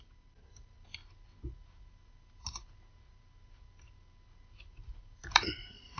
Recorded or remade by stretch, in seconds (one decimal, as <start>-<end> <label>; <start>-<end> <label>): 0.0-1.0 remade; 1.0-4.6 recorded; 4.6-6.0 remade